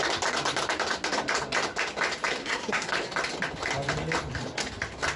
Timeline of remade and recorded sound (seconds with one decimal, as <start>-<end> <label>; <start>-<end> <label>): 0.0-2.4 recorded; 2.4-2.9 remade; 2.9-5.2 recorded